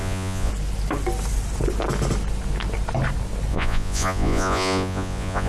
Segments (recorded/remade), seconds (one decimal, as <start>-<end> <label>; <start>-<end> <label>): 0.0-0.5 remade; 0.5-3.5 recorded; 3.5-5.5 remade